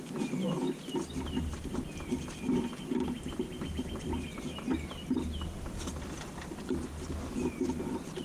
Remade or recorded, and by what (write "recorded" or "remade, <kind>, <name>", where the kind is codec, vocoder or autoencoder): recorded